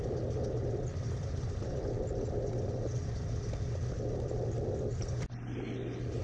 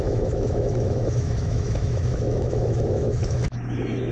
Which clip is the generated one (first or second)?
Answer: second